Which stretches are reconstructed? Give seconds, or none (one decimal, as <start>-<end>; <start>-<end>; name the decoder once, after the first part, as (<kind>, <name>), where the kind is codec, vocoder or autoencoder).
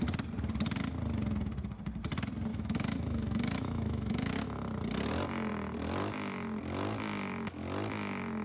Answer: 2.5-4.7 (autoencoder, DAC-VAE)